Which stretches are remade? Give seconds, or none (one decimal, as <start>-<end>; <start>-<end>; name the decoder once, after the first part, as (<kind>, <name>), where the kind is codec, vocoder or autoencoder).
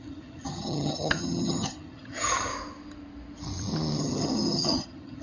0.0-2.5 (vocoder, HiFi-GAN); 4.0-5.2